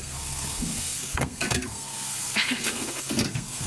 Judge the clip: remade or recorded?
remade